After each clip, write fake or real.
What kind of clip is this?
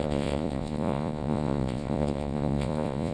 fake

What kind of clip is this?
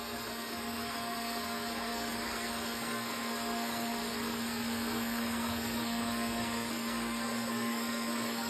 fake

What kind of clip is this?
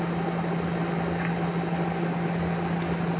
real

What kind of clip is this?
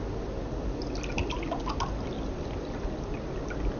real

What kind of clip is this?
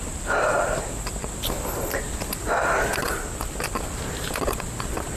real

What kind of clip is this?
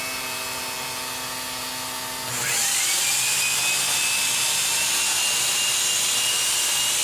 real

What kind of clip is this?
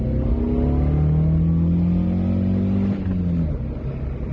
real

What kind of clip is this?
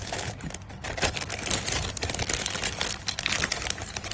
real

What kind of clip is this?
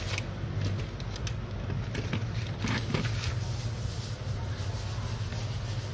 real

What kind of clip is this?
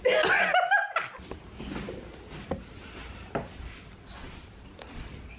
real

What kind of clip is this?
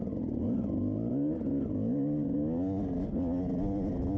real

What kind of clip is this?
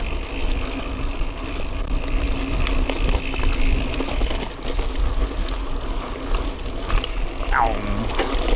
real